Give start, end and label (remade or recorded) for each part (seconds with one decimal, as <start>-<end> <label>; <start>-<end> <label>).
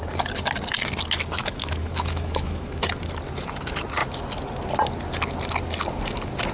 0.0-1.4 recorded; 1.4-2.8 remade; 2.8-6.5 recorded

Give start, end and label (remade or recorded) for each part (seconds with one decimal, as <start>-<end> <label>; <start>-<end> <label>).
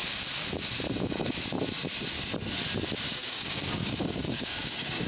0.0-3.1 recorded; 3.1-5.1 remade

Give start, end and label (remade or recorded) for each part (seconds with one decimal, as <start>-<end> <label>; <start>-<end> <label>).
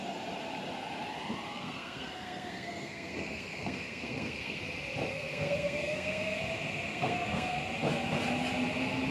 0.0-1.5 recorded; 1.5-4.6 remade; 4.6-5.1 recorded; 5.1-6.4 remade; 6.4-6.9 recorded; 6.9-7.6 remade; 7.6-9.1 recorded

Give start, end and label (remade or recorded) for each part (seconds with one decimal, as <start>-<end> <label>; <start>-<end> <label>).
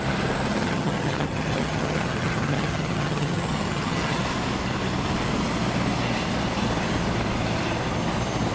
0.0-0.5 recorded; 0.5-4.2 remade; 4.2-8.5 recorded